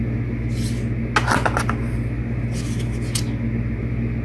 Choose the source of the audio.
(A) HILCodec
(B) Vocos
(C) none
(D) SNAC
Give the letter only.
C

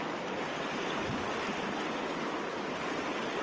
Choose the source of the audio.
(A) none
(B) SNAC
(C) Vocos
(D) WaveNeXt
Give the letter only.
A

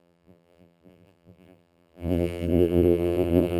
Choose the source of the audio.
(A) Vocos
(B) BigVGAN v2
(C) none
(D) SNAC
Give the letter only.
B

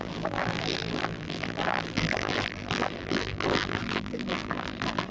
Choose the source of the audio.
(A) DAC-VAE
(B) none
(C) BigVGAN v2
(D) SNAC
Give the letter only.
C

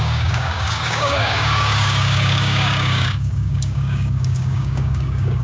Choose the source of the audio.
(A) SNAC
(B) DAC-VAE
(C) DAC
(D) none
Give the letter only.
C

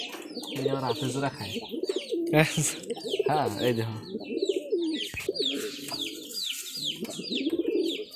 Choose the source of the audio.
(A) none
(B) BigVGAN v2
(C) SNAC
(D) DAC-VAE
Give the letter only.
A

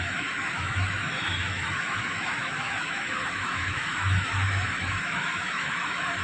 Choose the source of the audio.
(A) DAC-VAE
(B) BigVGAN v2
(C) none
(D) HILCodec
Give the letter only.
A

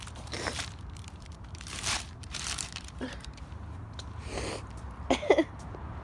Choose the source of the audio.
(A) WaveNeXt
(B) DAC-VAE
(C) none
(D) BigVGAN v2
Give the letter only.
D